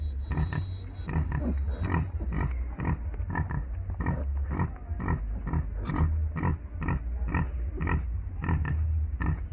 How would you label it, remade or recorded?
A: recorded